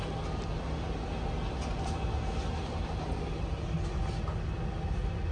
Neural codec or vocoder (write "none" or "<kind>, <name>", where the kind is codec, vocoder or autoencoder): none